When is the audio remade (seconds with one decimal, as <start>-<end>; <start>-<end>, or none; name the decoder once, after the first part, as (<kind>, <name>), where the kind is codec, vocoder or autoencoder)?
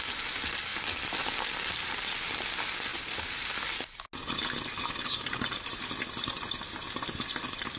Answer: 0.7-1.9 (vocoder, BigVGAN v2)